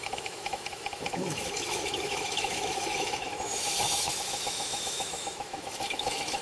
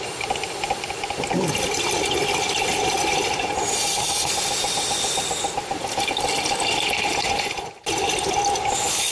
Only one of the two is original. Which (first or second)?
second